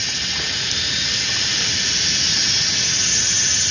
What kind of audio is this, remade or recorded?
recorded